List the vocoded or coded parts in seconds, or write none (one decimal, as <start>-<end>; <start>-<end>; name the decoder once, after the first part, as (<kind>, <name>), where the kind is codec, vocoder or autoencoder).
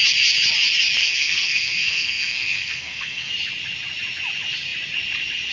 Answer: 1.0-3.3 (codec, SNAC)